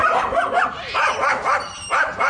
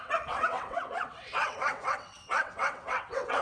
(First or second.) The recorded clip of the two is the first